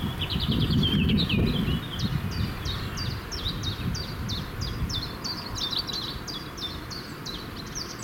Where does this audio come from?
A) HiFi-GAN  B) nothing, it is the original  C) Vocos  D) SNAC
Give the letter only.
B